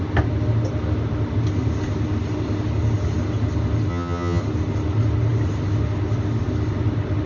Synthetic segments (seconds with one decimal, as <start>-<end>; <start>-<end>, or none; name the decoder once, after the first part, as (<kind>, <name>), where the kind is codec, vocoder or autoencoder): 3.9-4.4 (vocoder, HiFi-GAN)